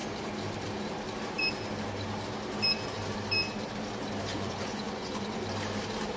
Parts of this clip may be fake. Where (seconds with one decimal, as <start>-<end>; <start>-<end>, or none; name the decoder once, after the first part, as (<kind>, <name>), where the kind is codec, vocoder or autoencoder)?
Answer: 4.3-5.4 (vocoder, Vocos)